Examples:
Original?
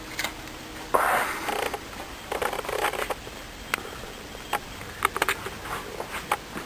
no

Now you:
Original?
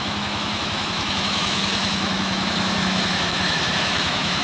no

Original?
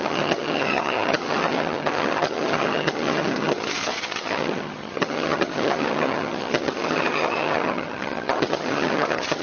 no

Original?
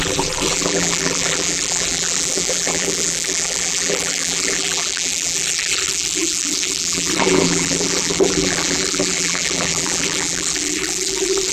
no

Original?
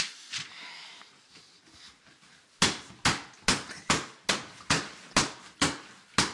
yes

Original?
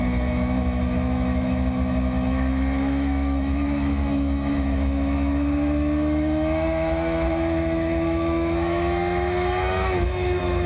no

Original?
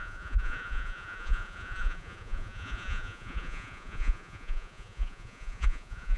no